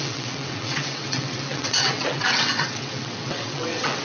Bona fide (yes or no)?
no